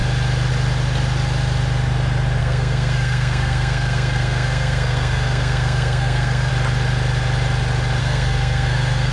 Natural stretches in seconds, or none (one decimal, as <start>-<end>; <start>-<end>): 0.0-2.4; 6.5-8.0